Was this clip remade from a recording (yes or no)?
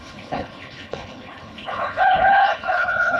yes